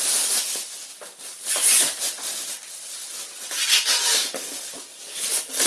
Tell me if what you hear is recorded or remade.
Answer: recorded